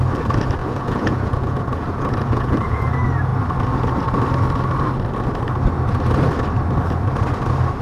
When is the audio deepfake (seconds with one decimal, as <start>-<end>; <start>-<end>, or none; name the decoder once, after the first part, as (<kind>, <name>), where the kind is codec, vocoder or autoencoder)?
0.6-2.9 (vocoder, Vocos)